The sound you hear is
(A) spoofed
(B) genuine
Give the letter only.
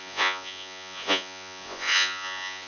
A